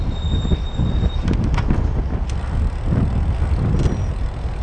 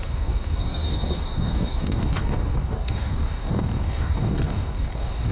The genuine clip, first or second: first